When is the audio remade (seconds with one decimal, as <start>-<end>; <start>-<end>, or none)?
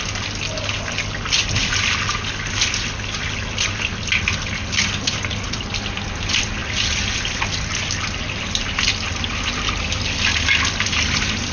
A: none